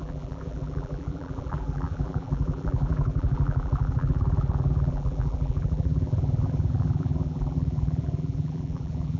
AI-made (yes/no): yes